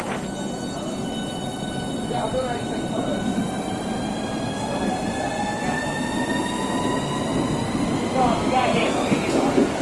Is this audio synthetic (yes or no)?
no